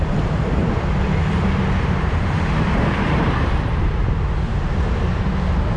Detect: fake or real fake